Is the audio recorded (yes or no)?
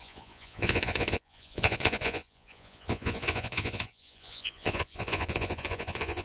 no